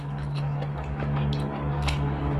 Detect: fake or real fake